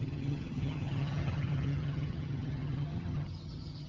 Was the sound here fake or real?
fake